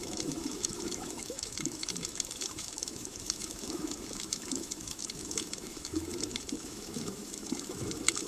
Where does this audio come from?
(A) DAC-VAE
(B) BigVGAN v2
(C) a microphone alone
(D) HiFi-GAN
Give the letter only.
A